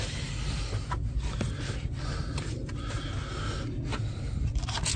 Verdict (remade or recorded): recorded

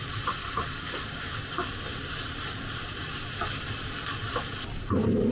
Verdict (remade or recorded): remade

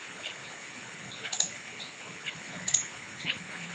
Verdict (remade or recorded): remade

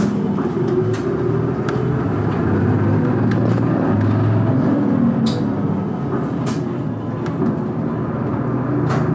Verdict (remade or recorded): recorded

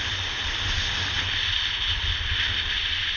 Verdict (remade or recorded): recorded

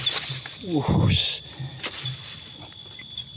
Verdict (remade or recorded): recorded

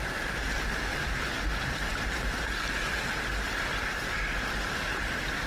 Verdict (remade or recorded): recorded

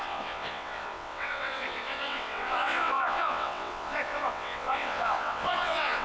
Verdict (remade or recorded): remade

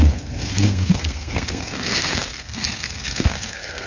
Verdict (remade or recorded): remade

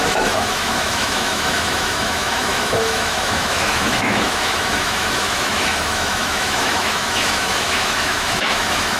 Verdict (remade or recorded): remade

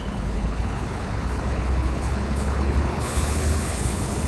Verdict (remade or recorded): remade